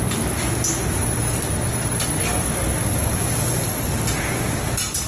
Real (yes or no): yes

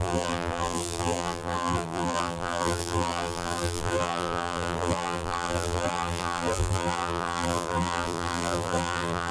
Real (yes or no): no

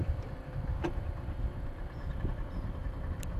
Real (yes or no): no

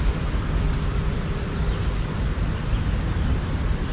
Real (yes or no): yes